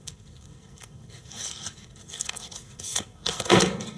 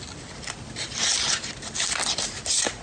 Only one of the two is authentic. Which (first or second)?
second